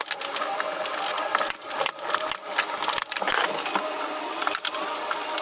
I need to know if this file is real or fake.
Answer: real